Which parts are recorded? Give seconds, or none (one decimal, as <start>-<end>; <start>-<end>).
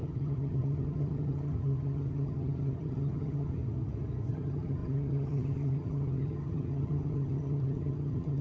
3.6-4.3